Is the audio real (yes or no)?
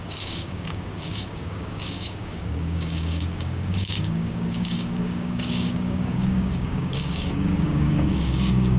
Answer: no